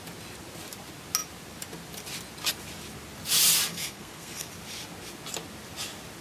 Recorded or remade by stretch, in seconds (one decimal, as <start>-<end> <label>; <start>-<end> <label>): 0.0-3.7 recorded; 3.7-4.5 remade; 4.5-6.2 recorded